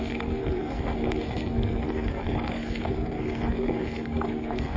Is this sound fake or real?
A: fake